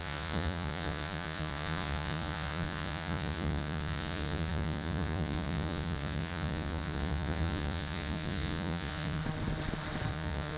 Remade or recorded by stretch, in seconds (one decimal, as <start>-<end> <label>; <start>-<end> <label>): 0.0-9.2 remade; 9.2-10.1 recorded; 10.1-10.6 remade